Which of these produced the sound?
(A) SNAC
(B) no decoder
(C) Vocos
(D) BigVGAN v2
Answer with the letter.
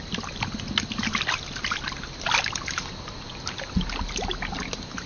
B